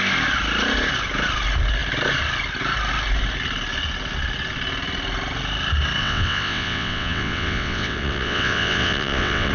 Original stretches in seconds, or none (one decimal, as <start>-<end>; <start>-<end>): 0.0-6.0